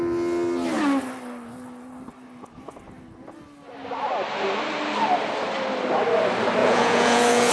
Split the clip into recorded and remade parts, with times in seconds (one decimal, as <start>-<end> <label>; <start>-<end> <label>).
0.0-6.6 recorded; 6.6-7.5 remade